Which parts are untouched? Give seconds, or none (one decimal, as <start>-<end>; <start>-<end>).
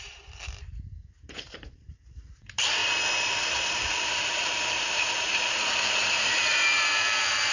2.8-3.4